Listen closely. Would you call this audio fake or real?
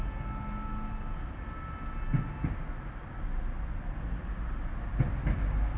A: real